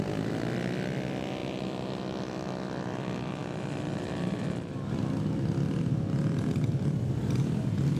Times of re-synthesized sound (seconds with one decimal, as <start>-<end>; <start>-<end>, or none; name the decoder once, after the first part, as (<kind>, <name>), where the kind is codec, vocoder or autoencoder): none